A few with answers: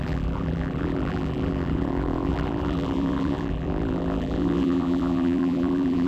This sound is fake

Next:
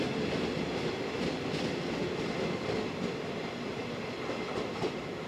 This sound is real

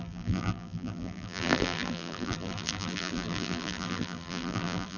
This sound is fake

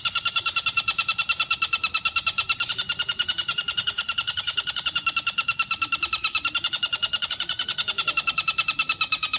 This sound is fake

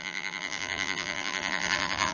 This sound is fake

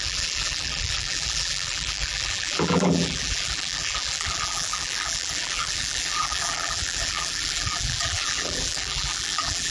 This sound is fake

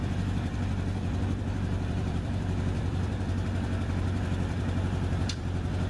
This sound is fake